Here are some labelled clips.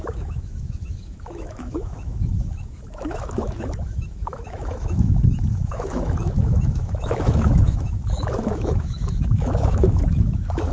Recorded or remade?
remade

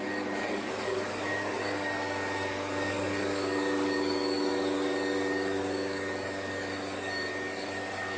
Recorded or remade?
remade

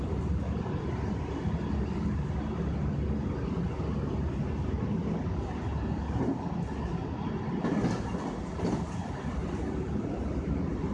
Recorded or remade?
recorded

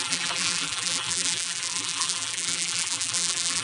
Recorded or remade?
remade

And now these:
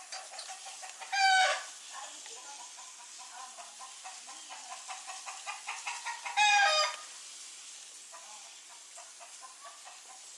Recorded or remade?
recorded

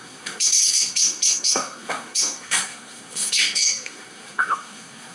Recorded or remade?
remade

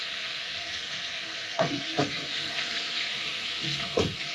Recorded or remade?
remade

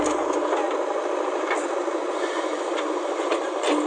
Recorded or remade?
recorded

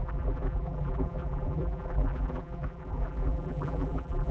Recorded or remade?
remade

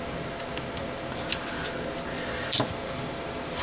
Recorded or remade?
recorded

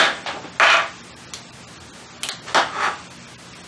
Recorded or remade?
recorded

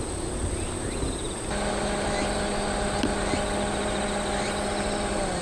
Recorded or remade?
recorded